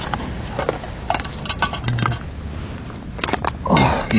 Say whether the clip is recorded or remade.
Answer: recorded